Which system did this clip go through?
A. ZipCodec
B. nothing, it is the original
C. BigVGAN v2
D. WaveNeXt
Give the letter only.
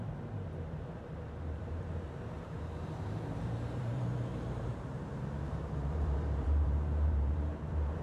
C